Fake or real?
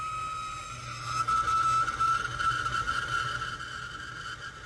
real